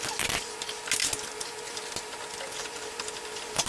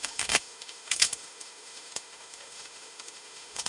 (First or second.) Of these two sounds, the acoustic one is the first